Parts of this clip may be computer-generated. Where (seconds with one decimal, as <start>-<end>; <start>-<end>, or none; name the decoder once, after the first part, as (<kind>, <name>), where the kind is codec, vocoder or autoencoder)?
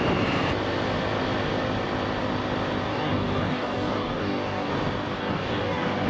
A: 2.9-4.7 (codec, DAC); 5.2-6.1